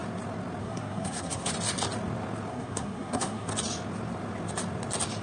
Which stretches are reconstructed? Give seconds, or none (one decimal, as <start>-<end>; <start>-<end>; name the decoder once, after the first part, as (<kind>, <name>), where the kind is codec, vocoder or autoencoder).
0.6-1.5 (codec, SNAC); 2.5-3.5